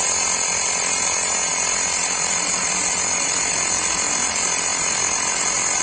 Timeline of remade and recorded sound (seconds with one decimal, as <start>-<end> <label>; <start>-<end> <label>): 0.0-1.5 recorded; 1.5-3.5 remade; 3.5-4.7 recorded; 4.7-5.8 remade